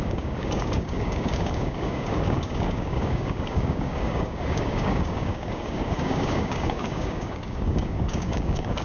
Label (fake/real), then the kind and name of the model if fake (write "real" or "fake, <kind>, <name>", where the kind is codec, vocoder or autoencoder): fake, codec, DAC